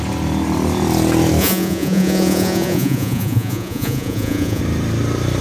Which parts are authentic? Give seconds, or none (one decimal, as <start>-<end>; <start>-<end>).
0.0-1.4; 4.6-5.4

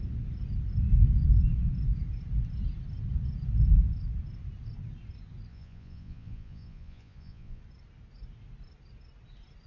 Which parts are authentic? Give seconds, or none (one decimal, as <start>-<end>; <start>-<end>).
0.0-5.5; 7.6-9.7